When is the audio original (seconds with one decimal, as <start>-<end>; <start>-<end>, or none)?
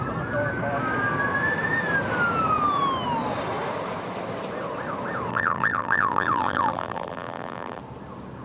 0.0-5.3; 7.8-8.4